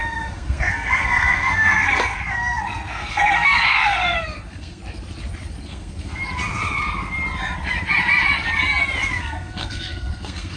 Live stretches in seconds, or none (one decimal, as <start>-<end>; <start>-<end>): 4.8-5.6; 6.2-9.2